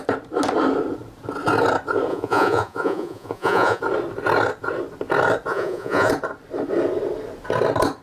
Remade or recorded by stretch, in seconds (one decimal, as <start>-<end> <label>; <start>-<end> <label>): 0.0-2.1 recorded; 2.1-3.8 remade; 3.8-5.5 recorded; 5.5-6.1 remade; 6.1-8.0 recorded